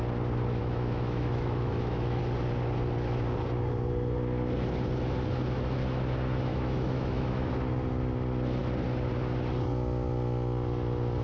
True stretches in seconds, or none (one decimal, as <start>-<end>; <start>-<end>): 0.0-0.6; 2.2-6.5; 7.5-11.2